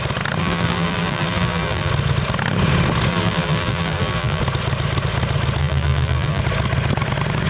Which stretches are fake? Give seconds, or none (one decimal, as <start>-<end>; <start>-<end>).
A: 0.4-1.9; 3.1-4.4; 5.6-6.4